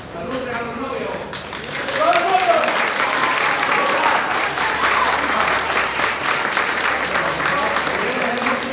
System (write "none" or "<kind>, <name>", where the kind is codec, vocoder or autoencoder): vocoder, BigVGAN v2